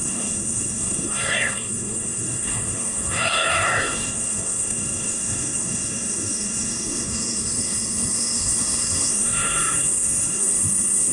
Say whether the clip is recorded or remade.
remade